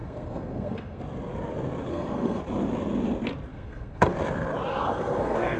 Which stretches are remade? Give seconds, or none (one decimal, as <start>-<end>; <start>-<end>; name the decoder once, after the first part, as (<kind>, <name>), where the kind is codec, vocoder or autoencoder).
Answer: 0.0-1.0 (codec, SNAC); 1.9-2.4; 3.5-4.1; 4.7-5.6